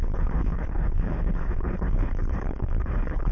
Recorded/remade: remade